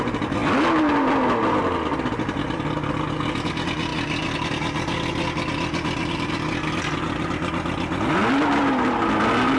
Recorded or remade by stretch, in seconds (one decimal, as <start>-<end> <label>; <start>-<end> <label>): 0.0-9.6 recorded